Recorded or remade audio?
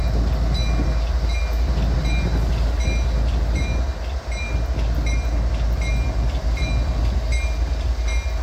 recorded